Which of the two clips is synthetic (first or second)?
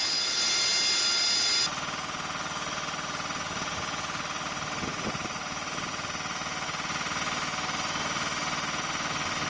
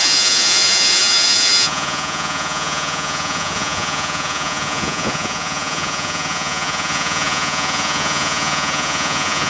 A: second